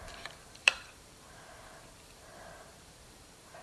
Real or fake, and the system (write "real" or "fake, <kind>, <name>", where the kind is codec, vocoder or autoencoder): fake, vocoder, BigVGAN v2